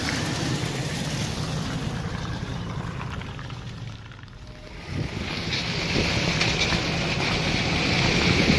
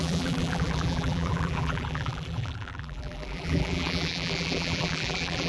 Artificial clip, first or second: second